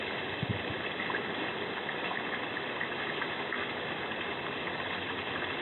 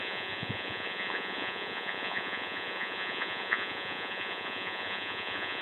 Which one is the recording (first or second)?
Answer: first